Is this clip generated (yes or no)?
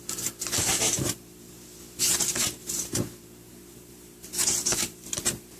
yes